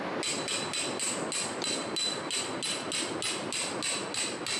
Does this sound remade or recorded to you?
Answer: recorded